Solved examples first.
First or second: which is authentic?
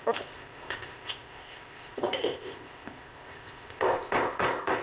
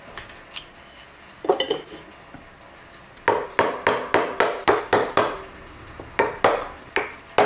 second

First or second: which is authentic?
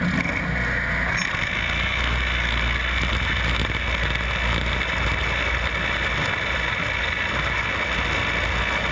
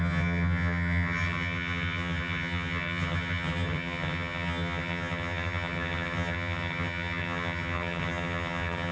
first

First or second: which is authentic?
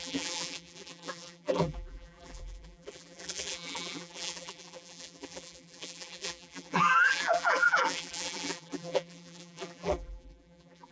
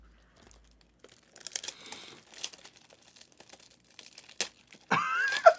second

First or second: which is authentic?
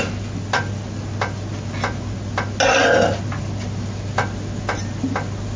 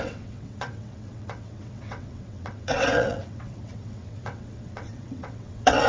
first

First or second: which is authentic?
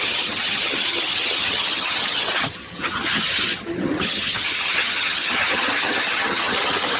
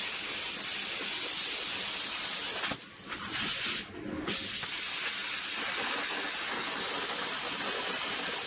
second